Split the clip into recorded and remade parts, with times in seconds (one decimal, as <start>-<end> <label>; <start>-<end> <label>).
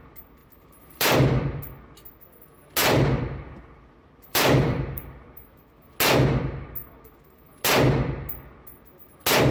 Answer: 0.0-0.4 recorded; 0.4-1.6 remade; 1.6-2.8 recorded; 2.8-5.6 remade; 5.6-9.5 recorded